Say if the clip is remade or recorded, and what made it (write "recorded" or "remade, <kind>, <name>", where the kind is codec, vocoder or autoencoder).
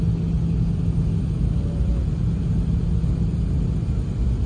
recorded